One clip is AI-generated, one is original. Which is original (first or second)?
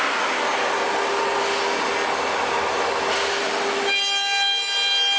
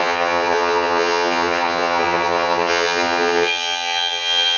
first